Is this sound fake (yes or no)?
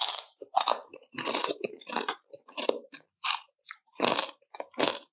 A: yes